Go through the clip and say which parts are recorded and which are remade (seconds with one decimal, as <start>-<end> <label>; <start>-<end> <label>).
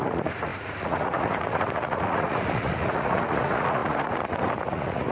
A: 0.0-5.1 remade